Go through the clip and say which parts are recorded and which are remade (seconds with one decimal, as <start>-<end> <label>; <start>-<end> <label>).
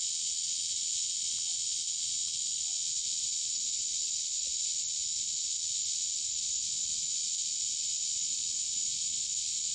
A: 0.0-9.7 recorded